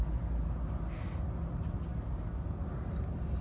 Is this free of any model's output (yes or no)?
yes